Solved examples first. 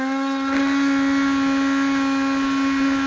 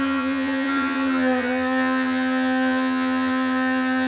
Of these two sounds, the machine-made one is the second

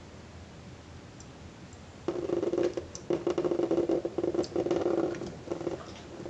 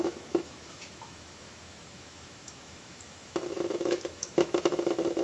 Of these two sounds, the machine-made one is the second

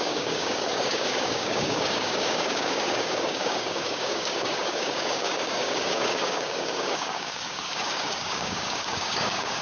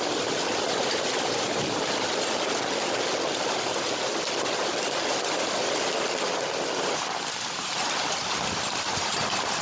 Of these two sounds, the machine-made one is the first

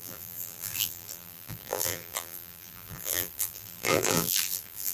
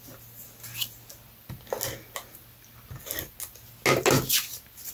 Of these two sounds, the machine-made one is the first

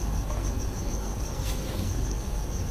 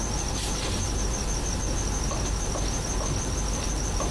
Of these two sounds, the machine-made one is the first